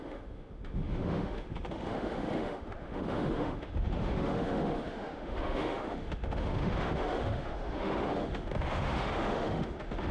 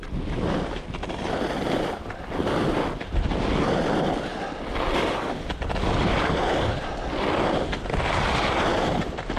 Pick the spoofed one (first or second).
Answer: first